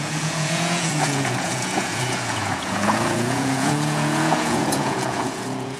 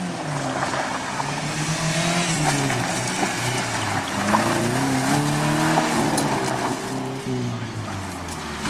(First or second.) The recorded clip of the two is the second